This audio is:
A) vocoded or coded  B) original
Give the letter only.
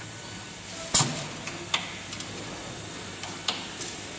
B